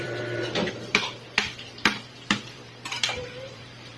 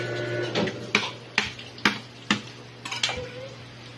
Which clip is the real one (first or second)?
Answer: second